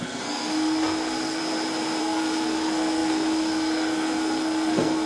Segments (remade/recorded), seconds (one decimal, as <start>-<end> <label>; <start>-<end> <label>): 0.0-1.4 remade; 1.4-2.0 recorded; 2.0-5.1 remade